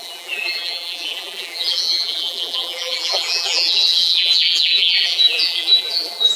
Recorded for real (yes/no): no